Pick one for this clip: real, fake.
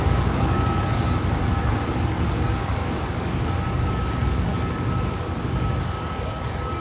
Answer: fake